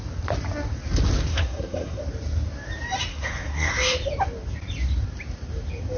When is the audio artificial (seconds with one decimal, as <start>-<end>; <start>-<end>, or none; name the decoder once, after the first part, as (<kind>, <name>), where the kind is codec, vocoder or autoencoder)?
1.3-2.0 (codec, SNAC); 3.1-3.7